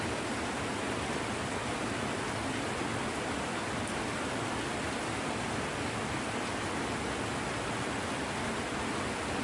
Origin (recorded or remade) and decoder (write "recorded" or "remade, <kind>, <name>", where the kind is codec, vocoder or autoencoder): recorded